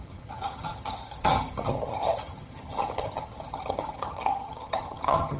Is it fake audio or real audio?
fake